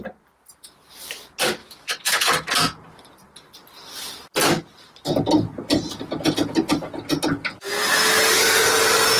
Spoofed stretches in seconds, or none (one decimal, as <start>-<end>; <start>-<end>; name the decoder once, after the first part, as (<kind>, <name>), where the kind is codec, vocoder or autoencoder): 1.6-2.5 (autoencoder, DAC-VAE)